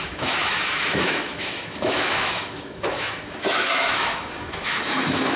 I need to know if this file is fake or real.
fake